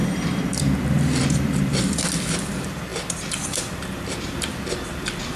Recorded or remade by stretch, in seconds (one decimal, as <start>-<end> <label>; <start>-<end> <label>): 0.0-5.4 remade

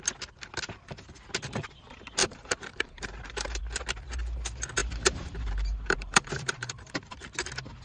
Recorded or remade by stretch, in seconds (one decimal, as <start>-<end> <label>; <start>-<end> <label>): 0.0-2.2 recorded; 2.2-3.6 remade; 3.6-4.8 recorded; 4.8-7.1 remade; 7.1-7.8 recorded

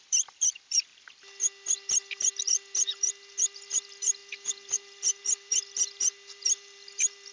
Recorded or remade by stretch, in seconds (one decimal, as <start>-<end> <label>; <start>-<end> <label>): 0.0-0.9 remade; 0.9-3.0 recorded; 3.0-7.3 remade